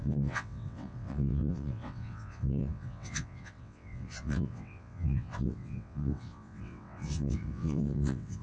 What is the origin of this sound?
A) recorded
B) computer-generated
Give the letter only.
B